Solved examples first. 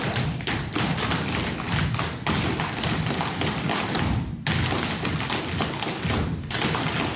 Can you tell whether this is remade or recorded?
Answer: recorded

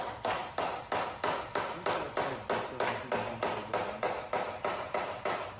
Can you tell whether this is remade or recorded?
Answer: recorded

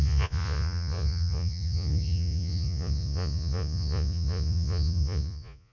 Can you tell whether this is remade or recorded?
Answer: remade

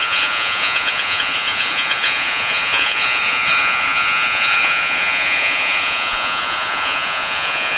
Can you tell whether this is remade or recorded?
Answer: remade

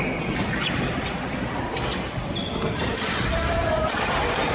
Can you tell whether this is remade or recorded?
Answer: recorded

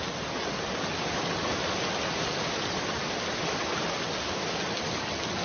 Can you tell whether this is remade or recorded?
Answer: recorded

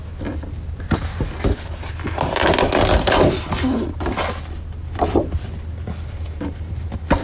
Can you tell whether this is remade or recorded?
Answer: recorded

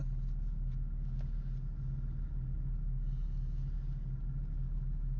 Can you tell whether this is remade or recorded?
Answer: recorded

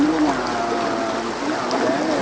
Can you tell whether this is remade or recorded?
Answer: recorded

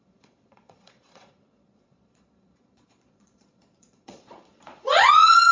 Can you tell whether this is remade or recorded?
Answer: remade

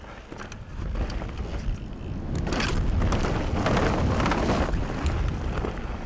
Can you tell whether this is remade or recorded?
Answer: recorded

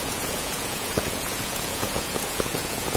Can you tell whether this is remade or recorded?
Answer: remade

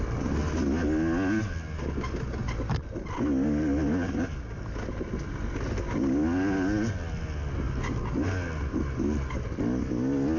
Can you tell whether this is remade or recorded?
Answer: recorded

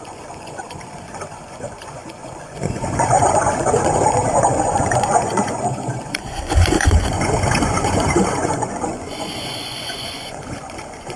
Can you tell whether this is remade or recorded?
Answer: remade